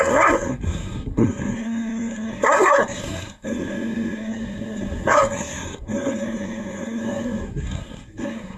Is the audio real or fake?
fake